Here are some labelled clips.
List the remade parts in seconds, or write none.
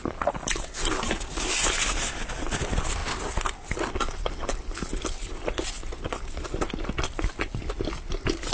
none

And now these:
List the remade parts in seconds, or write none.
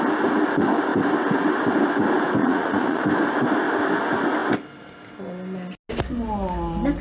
2.4-3.0 (vocoder, Vocos)